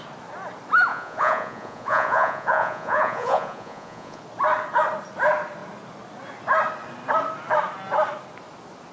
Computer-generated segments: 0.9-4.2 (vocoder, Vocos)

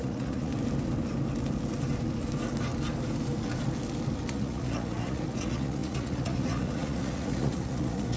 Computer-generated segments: 0.0-0.5 (vocoder, Vocos); 4.3-8.2

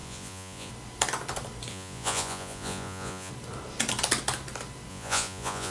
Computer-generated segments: 0.0-0.7 (vocoder, Vocos); 1.7-3.3; 4.9-5.7

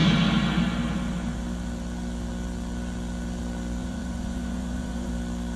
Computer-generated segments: 3.8-5.1 (vocoder, Vocos)